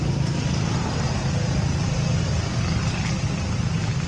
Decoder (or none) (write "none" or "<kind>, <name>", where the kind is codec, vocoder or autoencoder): none